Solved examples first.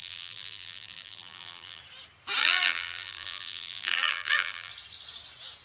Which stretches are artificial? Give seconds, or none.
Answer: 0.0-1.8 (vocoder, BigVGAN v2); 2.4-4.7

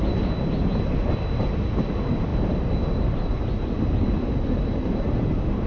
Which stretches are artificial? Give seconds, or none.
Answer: none

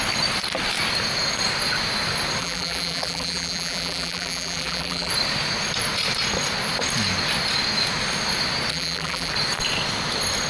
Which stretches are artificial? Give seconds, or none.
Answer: 2.4-5.1 (vocoder, BigVGAN v2); 8.7-9.3